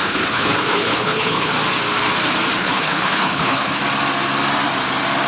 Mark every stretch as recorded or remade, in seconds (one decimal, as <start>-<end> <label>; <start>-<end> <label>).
0.0-1.5 remade; 1.5-2.6 recorded; 2.6-3.8 remade; 3.8-5.3 recorded